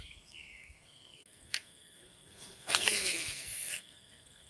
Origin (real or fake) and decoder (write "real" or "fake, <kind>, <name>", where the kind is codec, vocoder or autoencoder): fake, codec, SNAC